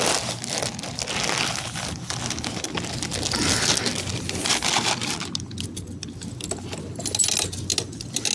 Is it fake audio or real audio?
real